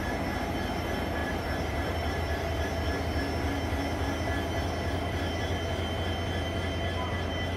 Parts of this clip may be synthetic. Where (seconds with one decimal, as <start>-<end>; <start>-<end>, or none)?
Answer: 1.2-2.2